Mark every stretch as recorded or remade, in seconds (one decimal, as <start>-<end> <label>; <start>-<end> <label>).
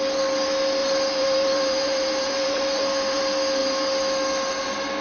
0.0-0.8 recorded; 0.8-3.2 remade; 3.2-5.0 recorded